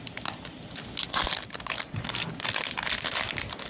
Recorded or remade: recorded